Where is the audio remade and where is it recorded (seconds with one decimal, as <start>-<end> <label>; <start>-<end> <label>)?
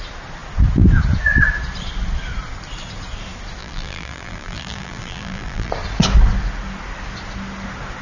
0.0-3.6 recorded; 3.6-5.7 remade; 5.7-8.0 recorded